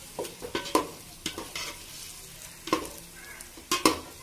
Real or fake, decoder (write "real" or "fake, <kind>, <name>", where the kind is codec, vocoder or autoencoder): real